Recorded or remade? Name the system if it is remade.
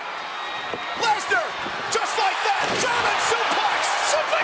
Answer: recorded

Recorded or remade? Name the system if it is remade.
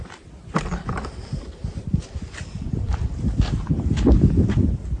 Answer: remade, vocoder, BigVGAN v2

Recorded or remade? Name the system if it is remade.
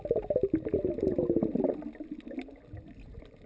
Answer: recorded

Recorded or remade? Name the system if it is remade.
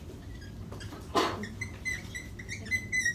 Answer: recorded